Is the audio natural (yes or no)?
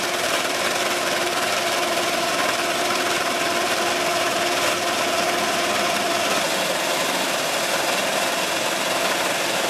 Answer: no